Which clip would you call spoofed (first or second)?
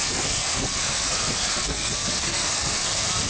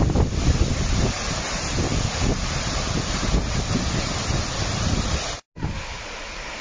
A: first